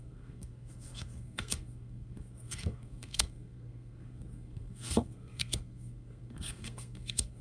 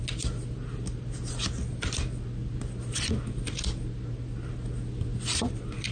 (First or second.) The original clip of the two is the second